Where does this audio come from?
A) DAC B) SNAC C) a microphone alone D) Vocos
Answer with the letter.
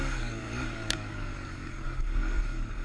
A